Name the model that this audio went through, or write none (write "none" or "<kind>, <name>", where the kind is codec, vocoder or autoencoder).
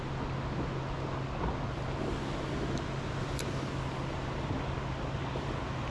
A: none